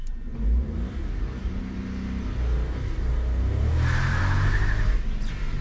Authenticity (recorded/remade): recorded